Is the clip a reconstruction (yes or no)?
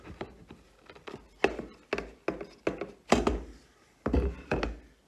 no